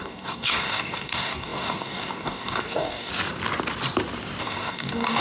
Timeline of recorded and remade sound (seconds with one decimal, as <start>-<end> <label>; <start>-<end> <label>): 0.0-3.1 remade; 3.1-4.4 recorded; 4.4-5.2 remade